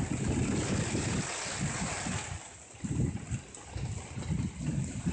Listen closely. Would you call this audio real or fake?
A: real